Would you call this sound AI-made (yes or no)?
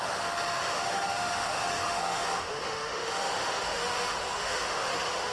yes